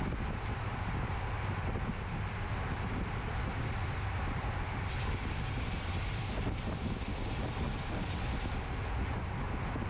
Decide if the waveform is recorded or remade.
recorded